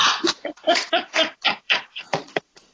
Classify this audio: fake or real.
fake